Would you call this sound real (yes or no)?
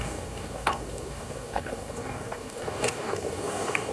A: no